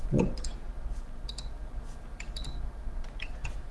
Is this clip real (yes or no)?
yes